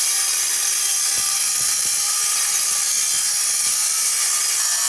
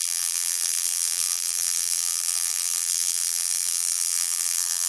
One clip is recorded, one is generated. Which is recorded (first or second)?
first